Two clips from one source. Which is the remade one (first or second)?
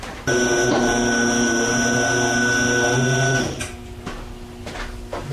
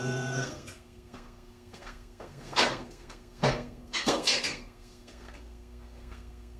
second